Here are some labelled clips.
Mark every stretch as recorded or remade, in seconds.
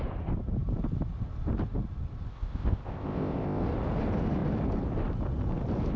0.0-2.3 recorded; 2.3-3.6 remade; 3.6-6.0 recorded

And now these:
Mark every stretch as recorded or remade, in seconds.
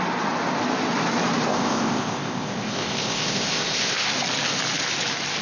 0.0-1.5 recorded; 1.5-4.1 remade; 4.1-5.4 recorded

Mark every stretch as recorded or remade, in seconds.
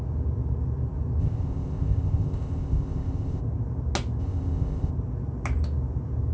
0.0-1.2 recorded; 1.2-3.4 remade; 3.4-4.2 recorded; 4.2-4.9 remade; 4.9-6.3 recorded